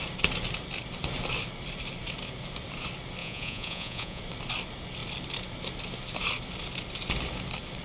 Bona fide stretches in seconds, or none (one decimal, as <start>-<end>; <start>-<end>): 0.0-3.2; 4.2-7.8

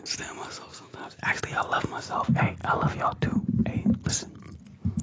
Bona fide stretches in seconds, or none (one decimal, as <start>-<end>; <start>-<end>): 0.0-0.7; 1.8-5.0